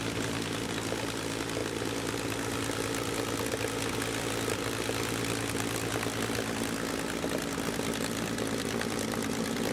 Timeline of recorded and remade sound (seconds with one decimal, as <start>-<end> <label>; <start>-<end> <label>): 0.0-9.7 recorded